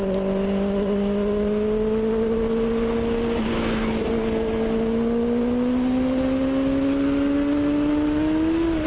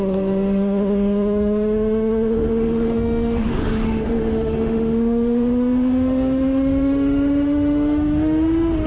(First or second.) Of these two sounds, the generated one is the second